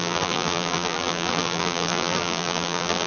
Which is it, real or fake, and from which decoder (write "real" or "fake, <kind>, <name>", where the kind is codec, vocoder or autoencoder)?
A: fake, vocoder, BigVGAN v2